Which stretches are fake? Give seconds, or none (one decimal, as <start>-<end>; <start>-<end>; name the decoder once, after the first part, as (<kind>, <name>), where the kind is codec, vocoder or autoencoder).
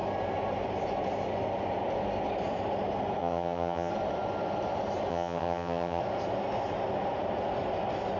3.2-3.9 (vocoder, HiFi-GAN); 5.1-6.0